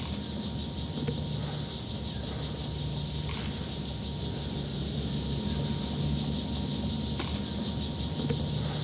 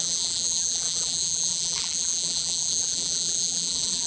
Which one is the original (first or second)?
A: first